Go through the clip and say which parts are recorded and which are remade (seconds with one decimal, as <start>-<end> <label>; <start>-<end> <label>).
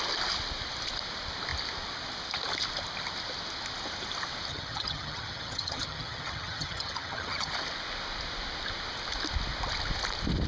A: 0.0-4.5 recorded; 4.5-7.5 remade; 7.5-10.5 recorded